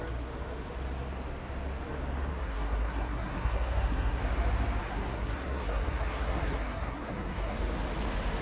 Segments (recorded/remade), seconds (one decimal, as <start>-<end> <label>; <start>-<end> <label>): 0.0-2.3 recorded; 2.3-4.2 remade; 4.2-4.8 recorded; 4.8-7.6 remade; 7.6-8.4 recorded